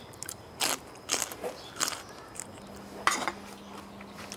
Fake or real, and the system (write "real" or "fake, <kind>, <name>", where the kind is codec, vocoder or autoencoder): real